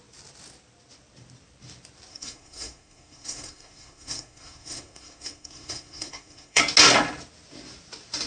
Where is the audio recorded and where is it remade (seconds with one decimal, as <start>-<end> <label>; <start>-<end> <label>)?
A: 0.0-2.1 recorded; 2.1-6.6 remade; 6.6-8.3 recorded